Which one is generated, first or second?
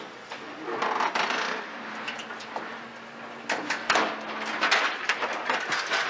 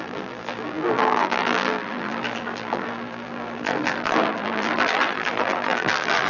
second